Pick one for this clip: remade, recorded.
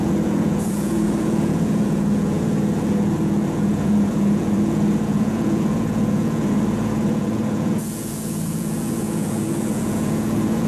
remade